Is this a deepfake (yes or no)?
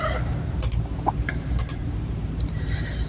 yes